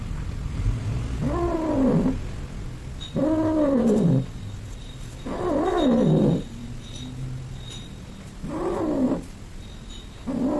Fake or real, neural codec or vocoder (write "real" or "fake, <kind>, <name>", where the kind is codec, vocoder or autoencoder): real